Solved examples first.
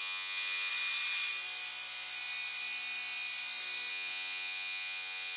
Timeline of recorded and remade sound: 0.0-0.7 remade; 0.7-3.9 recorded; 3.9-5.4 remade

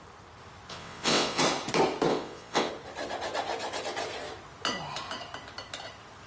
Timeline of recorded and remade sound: 0.0-0.7 recorded; 0.7-1.4 remade; 1.4-2.1 recorded; 2.1-2.7 remade; 2.7-6.3 recorded

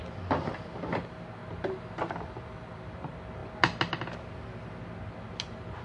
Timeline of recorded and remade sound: 0.0-1.4 remade; 1.4-2.1 recorded; 2.1-3.4 remade; 3.4-5.8 recorded

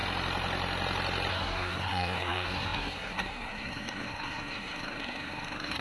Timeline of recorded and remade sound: 0.0-1.3 recorded; 1.3-5.8 remade

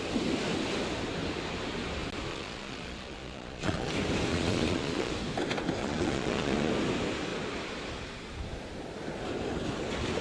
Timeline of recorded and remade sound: 0.0-2.3 recorded; 2.3-3.9 remade; 3.9-4.3 recorded; 4.3-5.1 remade; 5.1-5.8 recorded; 5.8-6.7 remade; 6.7-10.2 recorded

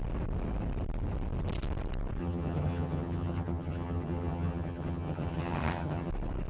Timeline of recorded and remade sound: 0.0-2.2 recorded; 2.2-6.1 remade; 6.1-6.5 recorded

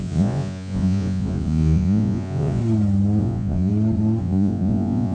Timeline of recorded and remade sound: 0.0-2.6 remade; 2.6-3.2 recorded; 3.2-3.7 remade; 3.7-4.2 recorded; 4.2-5.1 remade